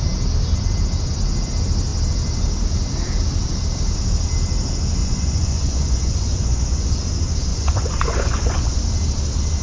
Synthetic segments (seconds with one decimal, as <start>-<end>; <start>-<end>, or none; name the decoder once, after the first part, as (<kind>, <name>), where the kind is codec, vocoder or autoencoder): 5.0-6.9 (vocoder, Vocos); 7.5-8.8